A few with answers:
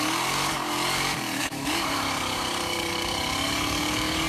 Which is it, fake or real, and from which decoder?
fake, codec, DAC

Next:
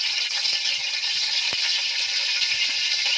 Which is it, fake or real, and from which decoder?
real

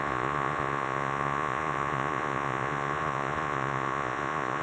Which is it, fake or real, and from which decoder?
fake, vocoder, Vocos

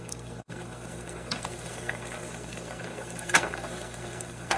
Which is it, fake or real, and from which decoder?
fake, codec, SNAC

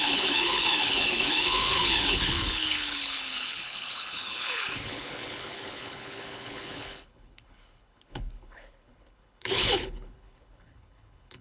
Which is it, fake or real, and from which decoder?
fake, codec, HILCodec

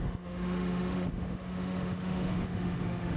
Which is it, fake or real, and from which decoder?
fake, autoencoder, DAC-VAE